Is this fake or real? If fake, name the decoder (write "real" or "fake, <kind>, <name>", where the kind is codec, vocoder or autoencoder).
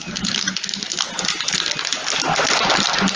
real